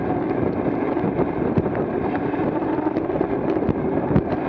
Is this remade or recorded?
recorded